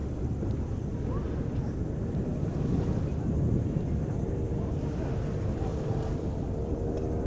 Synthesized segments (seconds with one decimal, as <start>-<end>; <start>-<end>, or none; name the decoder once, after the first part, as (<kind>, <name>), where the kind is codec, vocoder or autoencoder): 2.3-5.0 (vocoder, BigVGAN v2); 5.7-6.7